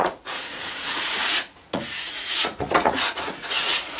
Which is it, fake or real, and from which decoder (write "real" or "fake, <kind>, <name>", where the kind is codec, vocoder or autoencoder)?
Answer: fake, vocoder, Vocos